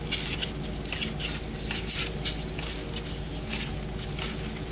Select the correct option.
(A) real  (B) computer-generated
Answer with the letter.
A